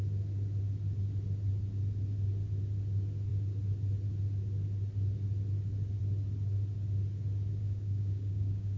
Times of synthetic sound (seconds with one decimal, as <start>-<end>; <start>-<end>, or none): 7.6-8.8